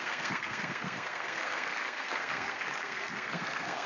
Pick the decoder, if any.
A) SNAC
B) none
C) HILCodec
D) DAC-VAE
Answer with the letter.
A